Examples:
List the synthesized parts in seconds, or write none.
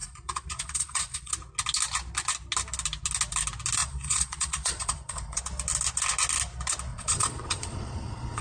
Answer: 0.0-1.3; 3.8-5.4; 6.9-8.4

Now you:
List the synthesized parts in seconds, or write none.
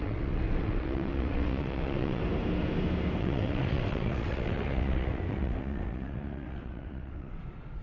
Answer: 0.0-2.2; 3.2-7.8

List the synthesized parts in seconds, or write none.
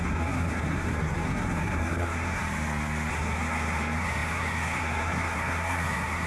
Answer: 0.0-2.4; 3.1-6.3